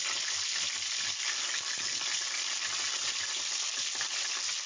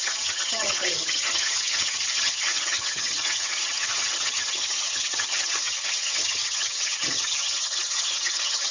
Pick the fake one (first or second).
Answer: second